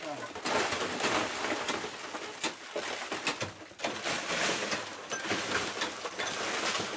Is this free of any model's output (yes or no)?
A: yes